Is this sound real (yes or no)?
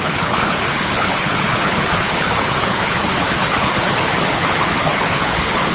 no